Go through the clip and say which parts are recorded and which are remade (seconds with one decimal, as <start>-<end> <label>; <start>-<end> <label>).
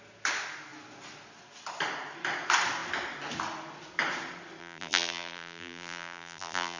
0.0-4.6 recorded; 4.6-6.8 remade